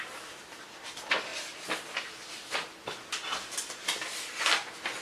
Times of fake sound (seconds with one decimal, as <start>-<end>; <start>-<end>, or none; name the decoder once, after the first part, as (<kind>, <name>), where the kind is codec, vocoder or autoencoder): none